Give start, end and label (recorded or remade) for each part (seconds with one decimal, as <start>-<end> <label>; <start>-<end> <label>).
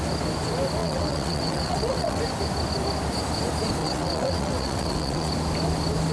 0.0-0.8 recorded; 0.8-2.2 remade; 2.2-3.8 recorded; 3.8-5.3 remade; 5.3-6.1 recorded